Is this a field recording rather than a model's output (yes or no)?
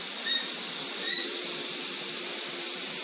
no